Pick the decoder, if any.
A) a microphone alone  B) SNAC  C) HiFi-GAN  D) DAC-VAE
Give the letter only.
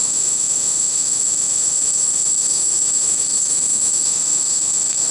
D